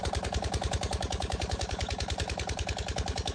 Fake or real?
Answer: fake